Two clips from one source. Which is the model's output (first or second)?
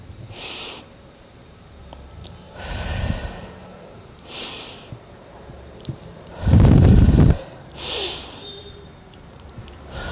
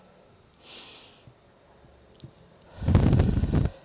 first